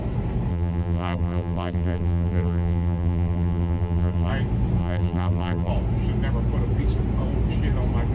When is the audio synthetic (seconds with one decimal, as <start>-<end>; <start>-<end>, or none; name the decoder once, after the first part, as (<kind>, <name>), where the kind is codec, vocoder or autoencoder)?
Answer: 0.5-4.3 (vocoder, BigVGAN v2); 4.8-5.7